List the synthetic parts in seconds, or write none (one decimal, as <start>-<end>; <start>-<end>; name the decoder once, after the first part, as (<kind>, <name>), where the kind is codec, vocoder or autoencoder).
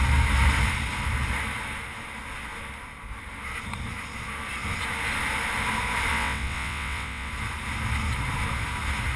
6.1-7.3 (vocoder, WaveNeXt)